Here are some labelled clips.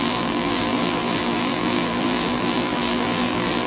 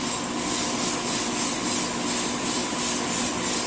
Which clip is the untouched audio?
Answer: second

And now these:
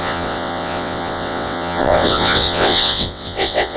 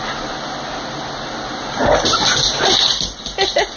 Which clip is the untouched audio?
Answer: second